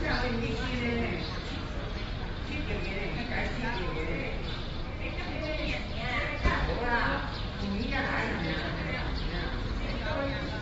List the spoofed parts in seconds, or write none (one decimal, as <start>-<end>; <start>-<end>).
none